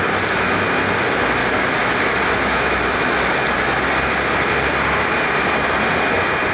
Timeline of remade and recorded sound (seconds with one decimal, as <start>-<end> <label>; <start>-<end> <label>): 0.0-1.4 recorded; 1.4-3.8 remade; 3.8-6.5 recorded

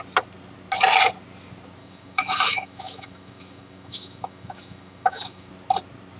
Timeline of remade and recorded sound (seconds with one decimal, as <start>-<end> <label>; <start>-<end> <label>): 0.0-1.8 recorded; 1.8-5.5 remade; 5.5-6.2 recorded

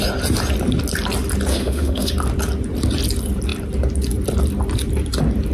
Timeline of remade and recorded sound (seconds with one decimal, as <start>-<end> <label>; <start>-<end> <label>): 0.0-1.5 recorded; 1.5-2.1 remade; 2.1-5.5 recorded

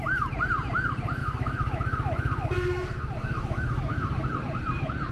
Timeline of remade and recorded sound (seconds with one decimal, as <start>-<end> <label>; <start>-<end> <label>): 0.0-1.2 recorded; 1.2-4.3 remade; 4.3-5.1 recorded

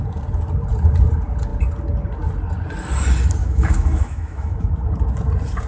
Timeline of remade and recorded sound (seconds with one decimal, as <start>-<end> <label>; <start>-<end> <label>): 0.0-3.4 recorded; 3.4-4.7 remade; 4.7-5.7 recorded

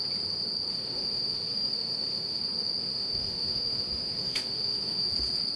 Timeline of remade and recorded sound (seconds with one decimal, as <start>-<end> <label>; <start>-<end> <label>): 0.0-0.7 recorded; 0.7-2.4 remade; 2.4-2.8 recorded; 2.8-5.1 remade; 5.1-5.6 recorded